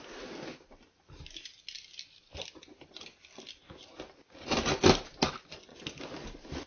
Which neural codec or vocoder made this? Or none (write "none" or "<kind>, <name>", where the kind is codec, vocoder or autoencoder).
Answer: none